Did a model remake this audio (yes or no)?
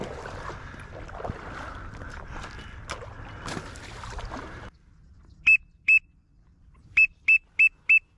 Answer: no